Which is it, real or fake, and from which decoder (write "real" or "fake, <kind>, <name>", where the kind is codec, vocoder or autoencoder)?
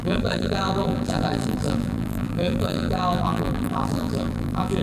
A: fake, vocoder, BigVGAN v2